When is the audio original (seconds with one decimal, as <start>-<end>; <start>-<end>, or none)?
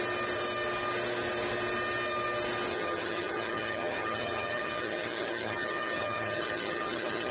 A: 0.0-2.7